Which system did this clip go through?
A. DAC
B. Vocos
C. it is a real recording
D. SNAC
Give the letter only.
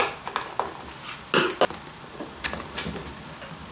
C